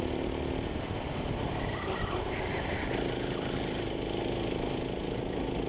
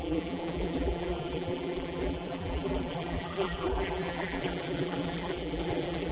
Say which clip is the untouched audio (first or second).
first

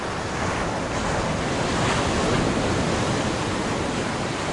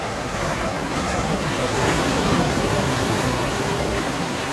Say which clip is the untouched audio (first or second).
first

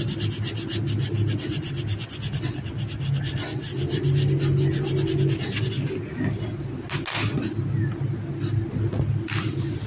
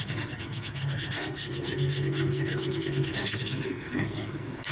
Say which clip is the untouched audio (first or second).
first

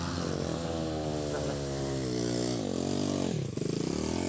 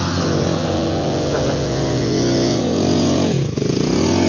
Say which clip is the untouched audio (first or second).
first